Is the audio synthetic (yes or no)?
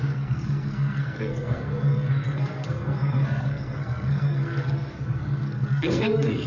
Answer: yes